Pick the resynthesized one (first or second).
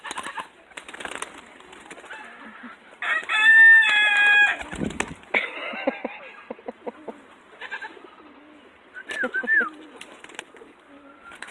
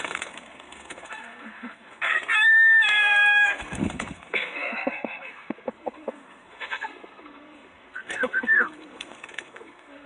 second